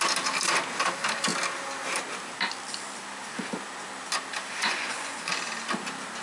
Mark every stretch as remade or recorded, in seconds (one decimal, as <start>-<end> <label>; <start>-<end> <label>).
0.0-4.6 recorded; 4.6-5.3 remade; 5.3-6.2 recorded

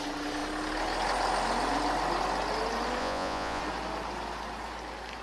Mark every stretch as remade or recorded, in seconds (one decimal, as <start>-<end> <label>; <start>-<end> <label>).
0.0-3.0 recorded; 3.0-3.6 remade; 3.6-5.2 recorded

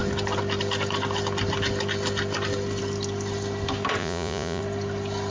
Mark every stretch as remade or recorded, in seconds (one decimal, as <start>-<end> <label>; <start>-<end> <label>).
0.0-4.0 recorded; 4.0-4.6 remade; 4.6-5.3 recorded

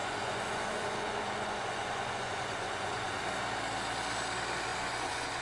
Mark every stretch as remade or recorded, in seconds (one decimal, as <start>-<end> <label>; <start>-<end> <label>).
0.0-3.2 remade; 3.2-4.7 recorded; 4.7-5.4 remade